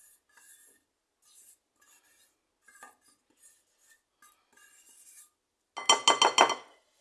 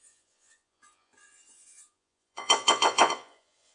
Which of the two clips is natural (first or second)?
first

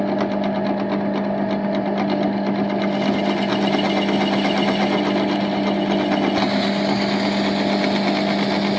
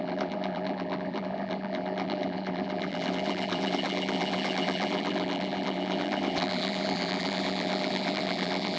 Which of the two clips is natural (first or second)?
first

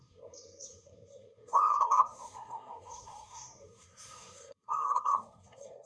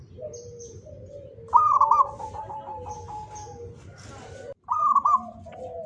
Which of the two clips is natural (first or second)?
second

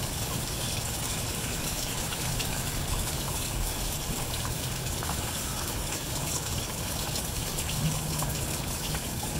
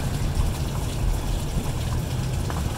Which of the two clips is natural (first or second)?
second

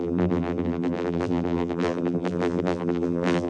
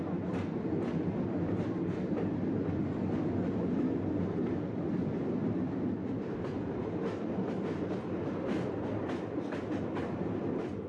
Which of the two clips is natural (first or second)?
second